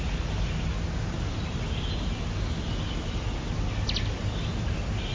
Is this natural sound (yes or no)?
yes